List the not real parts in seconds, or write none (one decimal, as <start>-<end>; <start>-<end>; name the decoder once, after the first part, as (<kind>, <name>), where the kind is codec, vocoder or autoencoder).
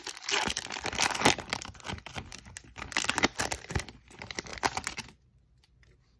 none